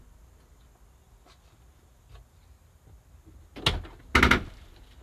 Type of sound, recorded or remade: recorded